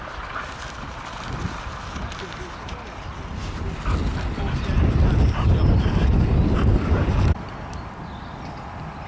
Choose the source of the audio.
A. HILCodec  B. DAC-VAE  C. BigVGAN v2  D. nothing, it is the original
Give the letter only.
D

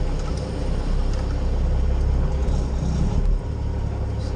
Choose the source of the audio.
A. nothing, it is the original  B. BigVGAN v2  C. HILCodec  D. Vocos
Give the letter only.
A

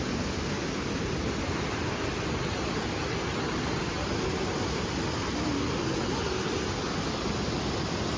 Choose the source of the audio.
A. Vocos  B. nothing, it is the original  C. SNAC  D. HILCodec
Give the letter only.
B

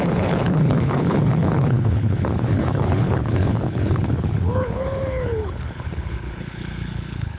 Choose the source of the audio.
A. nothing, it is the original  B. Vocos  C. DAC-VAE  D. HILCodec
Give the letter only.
D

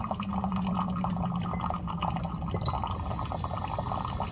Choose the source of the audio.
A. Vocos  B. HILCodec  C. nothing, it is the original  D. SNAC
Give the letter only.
C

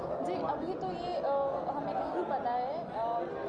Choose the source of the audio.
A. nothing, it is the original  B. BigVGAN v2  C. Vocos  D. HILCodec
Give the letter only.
A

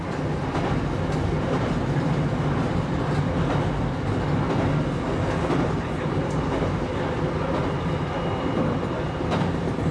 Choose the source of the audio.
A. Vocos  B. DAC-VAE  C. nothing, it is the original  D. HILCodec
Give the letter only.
C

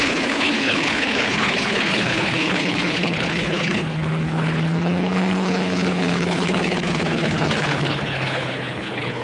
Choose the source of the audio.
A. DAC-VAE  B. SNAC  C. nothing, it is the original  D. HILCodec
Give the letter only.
D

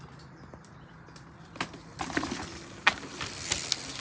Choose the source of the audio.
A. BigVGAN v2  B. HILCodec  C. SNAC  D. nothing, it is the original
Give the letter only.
D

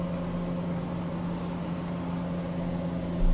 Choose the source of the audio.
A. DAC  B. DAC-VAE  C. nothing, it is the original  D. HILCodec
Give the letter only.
C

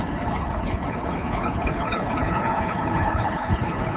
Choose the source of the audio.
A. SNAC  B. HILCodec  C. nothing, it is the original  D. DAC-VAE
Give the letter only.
B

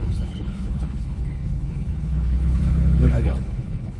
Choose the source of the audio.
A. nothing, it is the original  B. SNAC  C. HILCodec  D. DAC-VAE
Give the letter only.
C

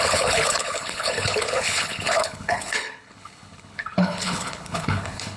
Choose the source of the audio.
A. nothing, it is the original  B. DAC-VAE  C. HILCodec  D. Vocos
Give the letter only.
C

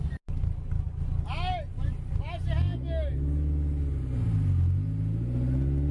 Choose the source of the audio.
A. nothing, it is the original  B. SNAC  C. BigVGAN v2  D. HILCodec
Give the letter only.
A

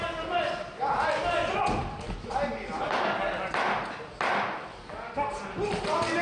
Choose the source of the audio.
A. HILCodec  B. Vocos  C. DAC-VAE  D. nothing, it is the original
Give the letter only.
D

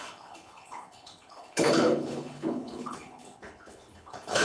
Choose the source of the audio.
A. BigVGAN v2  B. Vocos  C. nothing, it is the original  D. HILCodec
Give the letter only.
D